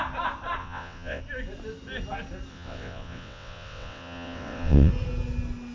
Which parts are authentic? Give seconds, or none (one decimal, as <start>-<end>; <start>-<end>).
0.0-0.6; 1.2-2.5; 4.9-5.7